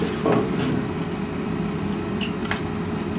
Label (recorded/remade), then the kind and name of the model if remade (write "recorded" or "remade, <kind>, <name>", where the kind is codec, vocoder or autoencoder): recorded